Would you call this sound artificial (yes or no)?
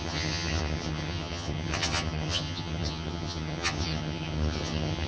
yes